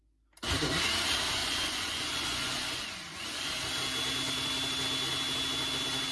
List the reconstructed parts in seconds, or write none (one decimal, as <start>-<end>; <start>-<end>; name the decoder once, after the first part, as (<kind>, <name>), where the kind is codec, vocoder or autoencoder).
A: 1.4-3.5 (vocoder, Vocos)